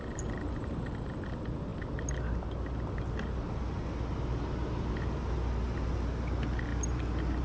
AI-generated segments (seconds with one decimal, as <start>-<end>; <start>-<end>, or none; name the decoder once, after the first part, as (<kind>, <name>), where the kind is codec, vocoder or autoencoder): none